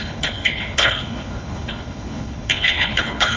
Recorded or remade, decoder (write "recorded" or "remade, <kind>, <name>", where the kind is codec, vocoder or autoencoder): remade, codec, HILCodec